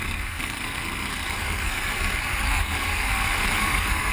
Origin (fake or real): fake